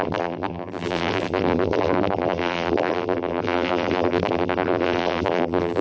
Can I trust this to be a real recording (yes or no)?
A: no